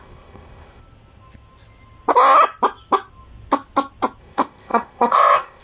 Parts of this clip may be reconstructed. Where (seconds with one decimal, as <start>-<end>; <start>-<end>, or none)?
0.0-0.8; 4.2-5.6